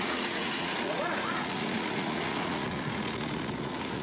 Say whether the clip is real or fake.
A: fake